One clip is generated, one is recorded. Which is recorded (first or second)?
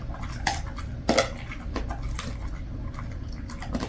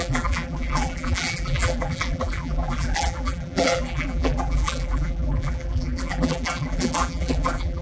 first